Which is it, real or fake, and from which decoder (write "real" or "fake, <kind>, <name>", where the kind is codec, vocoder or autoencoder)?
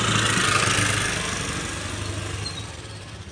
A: real